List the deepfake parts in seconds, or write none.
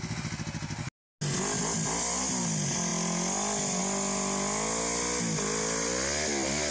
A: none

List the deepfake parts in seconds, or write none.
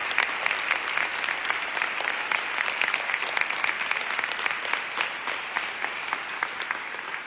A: none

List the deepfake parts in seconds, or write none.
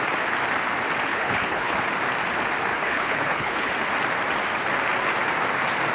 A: 1.1-1.8 (codec, HILCodec); 2.7-3.7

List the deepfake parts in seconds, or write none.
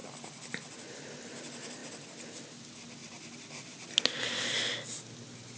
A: none